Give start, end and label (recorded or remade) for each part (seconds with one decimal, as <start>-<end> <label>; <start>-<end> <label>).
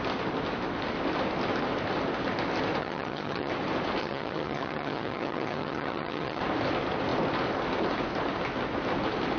0.0-2.8 recorded; 2.8-3.5 remade; 3.5-4.0 recorded; 4.0-6.4 remade; 6.4-9.4 recorded